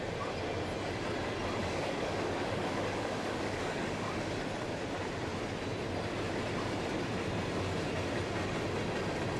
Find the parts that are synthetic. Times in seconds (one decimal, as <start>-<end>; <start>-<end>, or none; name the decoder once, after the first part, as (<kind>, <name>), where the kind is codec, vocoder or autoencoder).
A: 1.6-4.1 (codec, DAC)